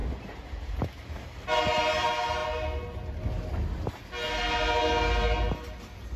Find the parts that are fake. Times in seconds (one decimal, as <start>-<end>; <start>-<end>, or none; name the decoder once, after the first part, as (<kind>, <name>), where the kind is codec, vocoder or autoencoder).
0.0-1.4 (vocoder, BigVGAN v2)